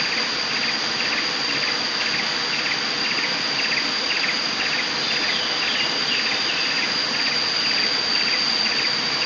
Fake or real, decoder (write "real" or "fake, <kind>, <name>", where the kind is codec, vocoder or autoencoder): real